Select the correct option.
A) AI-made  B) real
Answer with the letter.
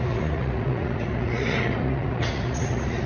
A